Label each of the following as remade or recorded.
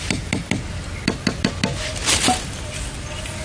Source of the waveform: recorded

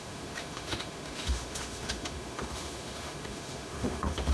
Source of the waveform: remade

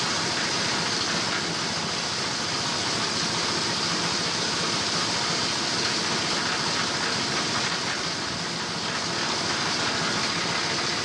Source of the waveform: recorded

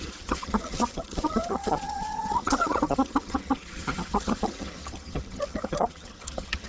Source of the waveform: remade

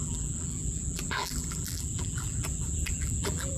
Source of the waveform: remade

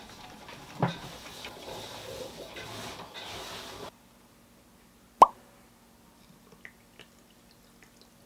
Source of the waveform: recorded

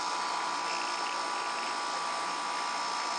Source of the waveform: recorded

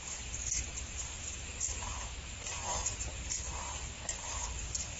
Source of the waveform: recorded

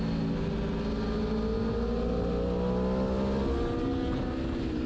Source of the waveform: recorded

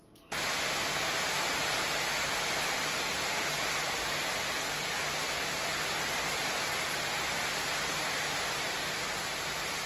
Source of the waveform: recorded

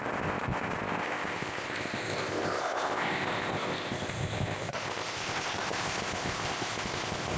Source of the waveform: remade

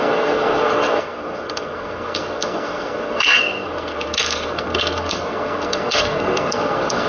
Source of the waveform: remade